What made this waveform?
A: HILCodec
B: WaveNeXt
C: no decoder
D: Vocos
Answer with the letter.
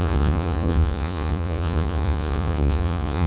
D